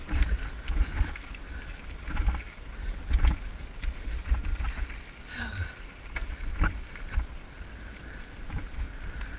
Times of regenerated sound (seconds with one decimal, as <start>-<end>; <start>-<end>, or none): none